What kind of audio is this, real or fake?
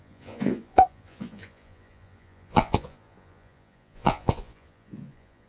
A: fake